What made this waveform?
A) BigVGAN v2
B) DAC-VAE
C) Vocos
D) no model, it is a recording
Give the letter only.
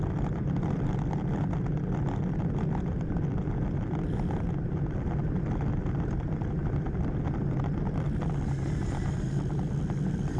D